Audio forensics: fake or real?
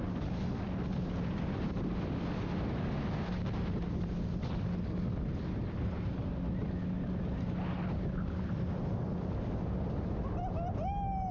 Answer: real